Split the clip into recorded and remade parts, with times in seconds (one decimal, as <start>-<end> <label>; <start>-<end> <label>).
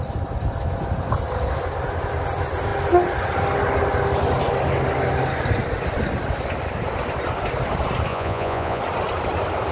0.0-8.1 recorded; 8.1-8.8 remade; 8.8-9.7 recorded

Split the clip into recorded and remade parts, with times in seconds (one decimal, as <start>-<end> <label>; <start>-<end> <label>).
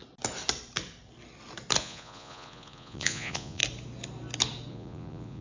0.0-1.8 recorded; 1.8-3.6 remade; 3.6-4.7 recorded; 4.7-5.4 remade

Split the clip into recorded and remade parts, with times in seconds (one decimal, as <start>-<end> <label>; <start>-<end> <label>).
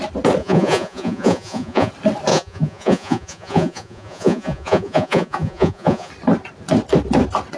0.0-0.4 recorded; 0.4-1.9 remade; 1.9-2.3 recorded; 2.3-6.1 remade; 6.1-7.6 recorded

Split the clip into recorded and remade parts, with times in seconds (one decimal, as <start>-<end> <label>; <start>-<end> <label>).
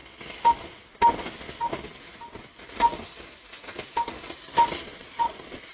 0.0-5.0 recorded; 5.0-5.7 remade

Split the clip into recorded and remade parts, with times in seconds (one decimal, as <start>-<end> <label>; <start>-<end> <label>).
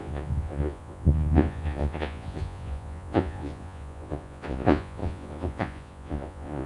0.0-6.7 remade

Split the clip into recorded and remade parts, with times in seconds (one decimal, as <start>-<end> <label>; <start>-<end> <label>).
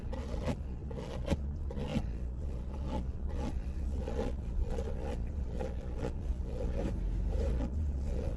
0.0-6.8 remade; 6.8-7.5 recorded; 7.5-8.4 remade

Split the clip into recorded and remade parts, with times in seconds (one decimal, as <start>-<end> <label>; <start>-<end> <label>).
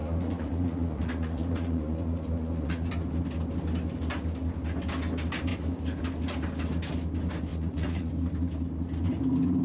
0.0-2.9 remade; 2.9-7.5 recorded; 7.5-8.1 remade; 8.1-9.6 recorded